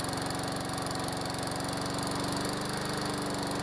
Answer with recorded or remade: recorded